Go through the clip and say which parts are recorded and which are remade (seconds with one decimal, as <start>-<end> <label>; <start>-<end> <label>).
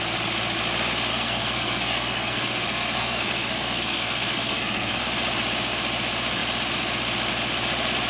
0.0-1.1 recorded; 1.1-5.0 remade; 5.0-8.1 recorded